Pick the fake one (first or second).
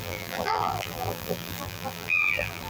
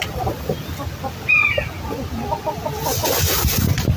first